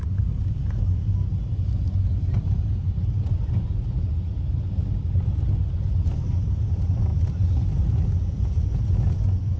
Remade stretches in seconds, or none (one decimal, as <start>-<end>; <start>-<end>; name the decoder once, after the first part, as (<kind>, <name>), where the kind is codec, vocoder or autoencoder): none